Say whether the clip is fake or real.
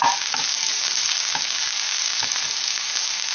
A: fake